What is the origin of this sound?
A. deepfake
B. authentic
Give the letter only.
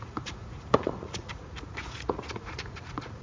A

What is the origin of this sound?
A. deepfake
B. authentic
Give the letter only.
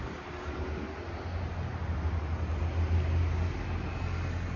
B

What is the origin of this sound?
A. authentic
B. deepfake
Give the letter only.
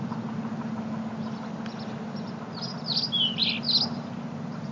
A